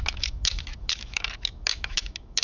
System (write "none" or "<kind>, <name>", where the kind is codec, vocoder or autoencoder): autoencoder, DAC-VAE